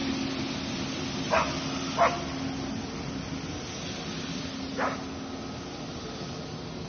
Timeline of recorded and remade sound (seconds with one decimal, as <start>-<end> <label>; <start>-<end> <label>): 0.0-6.9 recorded